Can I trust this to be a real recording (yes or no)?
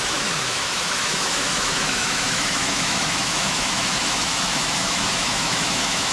no